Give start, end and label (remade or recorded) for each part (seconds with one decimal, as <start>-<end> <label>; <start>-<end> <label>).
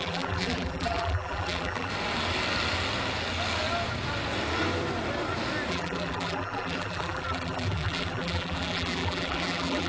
0.0-1.9 remade; 1.9-5.7 recorded; 5.7-9.9 remade